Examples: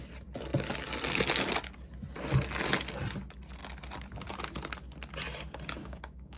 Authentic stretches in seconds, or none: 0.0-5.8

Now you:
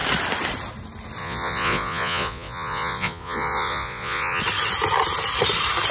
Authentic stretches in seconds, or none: 0.0-1.2; 4.4-5.9